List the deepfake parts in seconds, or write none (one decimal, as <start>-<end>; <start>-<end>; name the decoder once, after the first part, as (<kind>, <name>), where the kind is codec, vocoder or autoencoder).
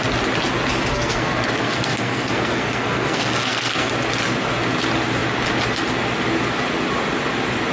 0.9-3.9 (codec, SNAC)